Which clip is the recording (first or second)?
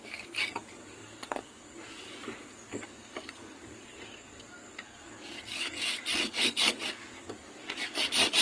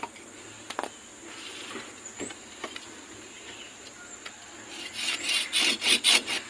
second